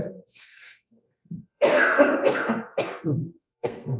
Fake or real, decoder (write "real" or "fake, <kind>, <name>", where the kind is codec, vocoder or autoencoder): fake, codec, SNAC